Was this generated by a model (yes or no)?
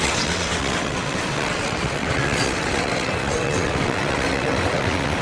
yes